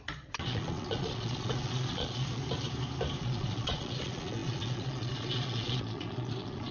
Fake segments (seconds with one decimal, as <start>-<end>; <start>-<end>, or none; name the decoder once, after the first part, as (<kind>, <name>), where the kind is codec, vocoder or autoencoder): 0.0-2.4 (vocoder, Vocos); 3.2-6.7